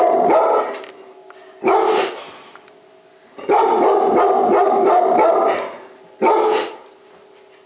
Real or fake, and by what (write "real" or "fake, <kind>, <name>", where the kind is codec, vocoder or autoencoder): real